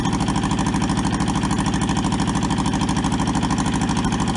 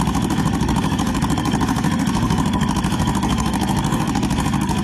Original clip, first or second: first